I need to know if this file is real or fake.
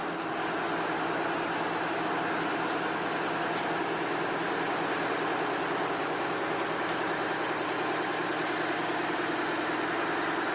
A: real